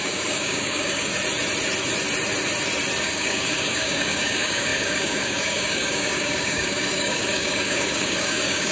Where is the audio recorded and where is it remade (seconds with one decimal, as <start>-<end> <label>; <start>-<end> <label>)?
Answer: 0.0-1.1 remade; 1.1-3.0 recorded; 3.0-8.7 remade

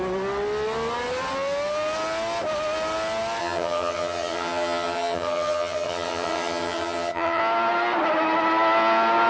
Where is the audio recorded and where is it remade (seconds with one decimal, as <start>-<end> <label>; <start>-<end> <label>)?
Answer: 0.0-3.4 recorded; 3.4-7.4 remade; 7.4-9.3 recorded

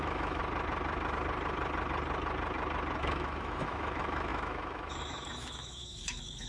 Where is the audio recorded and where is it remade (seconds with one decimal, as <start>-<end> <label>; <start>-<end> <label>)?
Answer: 0.0-0.4 remade; 0.4-3.0 recorded; 3.0-6.5 remade

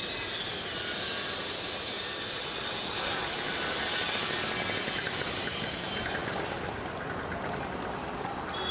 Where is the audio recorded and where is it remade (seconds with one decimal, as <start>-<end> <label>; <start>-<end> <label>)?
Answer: 0.0-4.1 recorded; 4.1-6.2 remade; 6.2-7.9 recorded; 7.9-8.7 remade

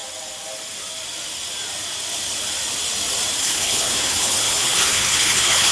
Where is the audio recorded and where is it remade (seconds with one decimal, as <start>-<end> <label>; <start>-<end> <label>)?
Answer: 0.0-3.4 recorded; 3.4-5.7 remade

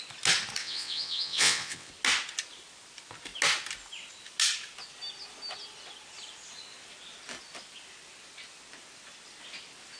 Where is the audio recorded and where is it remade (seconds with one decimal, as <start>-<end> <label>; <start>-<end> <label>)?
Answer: 0.0-0.6 recorded; 0.6-1.9 remade; 1.9-10.0 recorded